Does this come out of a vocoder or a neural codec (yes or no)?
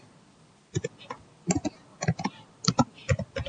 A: no